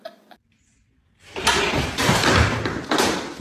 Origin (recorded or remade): remade